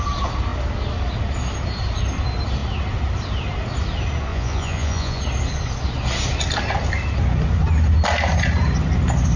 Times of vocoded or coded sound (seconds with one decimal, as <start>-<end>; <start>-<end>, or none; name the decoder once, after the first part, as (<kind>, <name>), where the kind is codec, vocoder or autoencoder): 4.3-5.2 (vocoder, Vocos)